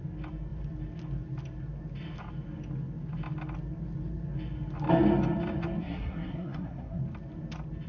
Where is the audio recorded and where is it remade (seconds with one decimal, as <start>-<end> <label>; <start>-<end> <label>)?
0.0-5.8 recorded; 5.8-7.0 remade; 7.0-7.9 recorded